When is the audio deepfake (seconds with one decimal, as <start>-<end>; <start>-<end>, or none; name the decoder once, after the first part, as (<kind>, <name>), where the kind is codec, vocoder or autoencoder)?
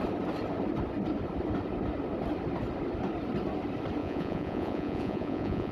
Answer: 4.0-5.7 (vocoder, Vocos)